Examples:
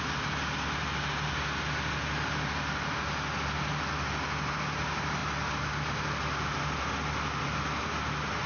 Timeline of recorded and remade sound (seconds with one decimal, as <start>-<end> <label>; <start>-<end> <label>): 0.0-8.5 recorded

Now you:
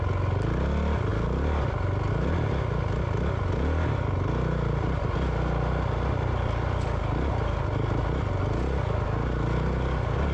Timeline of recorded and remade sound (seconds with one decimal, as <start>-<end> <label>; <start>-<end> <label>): 0.0-10.3 recorded

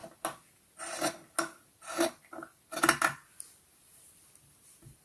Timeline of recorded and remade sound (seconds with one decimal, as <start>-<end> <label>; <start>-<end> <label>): 0.0-5.0 recorded

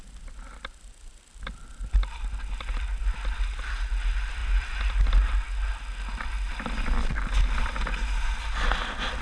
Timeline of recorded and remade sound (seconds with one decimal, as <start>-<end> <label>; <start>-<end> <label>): 0.0-9.2 recorded

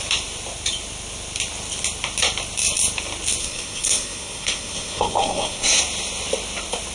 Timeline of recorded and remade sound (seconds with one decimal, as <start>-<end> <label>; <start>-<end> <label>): 0.0-3.4 recorded; 3.4-5.8 remade; 5.8-6.9 recorded

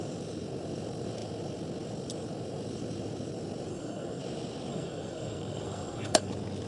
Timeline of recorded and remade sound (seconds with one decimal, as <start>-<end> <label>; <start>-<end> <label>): 0.0-3.7 recorded; 3.7-4.2 remade; 4.2-4.7 recorded; 4.7-6.3 remade; 6.3-6.7 recorded

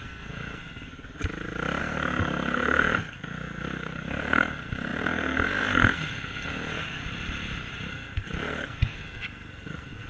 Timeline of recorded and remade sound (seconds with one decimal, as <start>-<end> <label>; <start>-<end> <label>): 0.0-1.2 remade; 1.2-1.8 recorded; 1.8-7.0 remade; 7.0-7.9 recorded; 7.9-10.1 remade